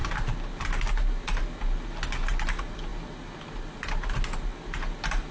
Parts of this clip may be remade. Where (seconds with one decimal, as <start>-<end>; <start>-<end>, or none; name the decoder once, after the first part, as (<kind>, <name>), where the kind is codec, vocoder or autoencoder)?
none